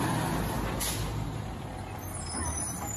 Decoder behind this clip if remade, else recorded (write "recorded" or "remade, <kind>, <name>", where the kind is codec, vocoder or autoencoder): recorded